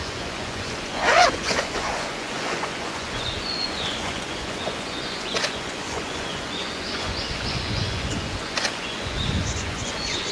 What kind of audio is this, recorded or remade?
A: remade